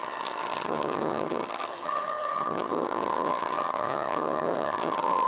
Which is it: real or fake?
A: fake